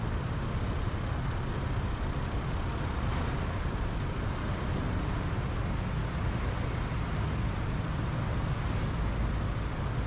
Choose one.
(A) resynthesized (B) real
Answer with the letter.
B